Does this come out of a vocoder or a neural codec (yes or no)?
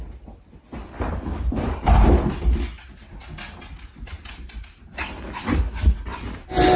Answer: no